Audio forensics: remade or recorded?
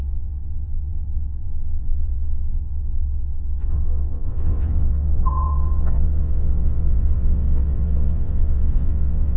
remade